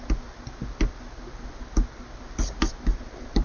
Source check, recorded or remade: recorded